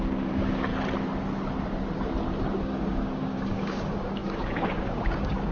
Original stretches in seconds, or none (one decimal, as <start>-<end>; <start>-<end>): 0.7-2.6